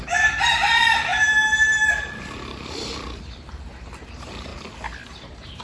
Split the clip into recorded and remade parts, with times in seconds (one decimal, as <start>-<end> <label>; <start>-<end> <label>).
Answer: 0.0-4.5 remade; 4.5-5.1 recorded; 5.1-5.6 remade